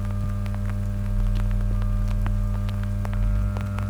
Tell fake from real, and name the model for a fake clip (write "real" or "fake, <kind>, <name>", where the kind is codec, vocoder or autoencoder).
real